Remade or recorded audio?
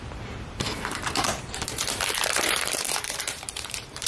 remade